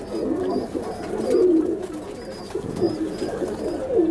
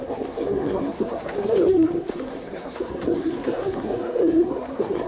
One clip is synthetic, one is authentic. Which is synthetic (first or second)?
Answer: second